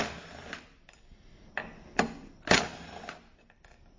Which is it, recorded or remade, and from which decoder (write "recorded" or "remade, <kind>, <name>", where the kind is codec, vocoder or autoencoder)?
recorded